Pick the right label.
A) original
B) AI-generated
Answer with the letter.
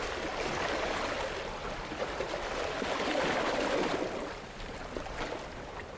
A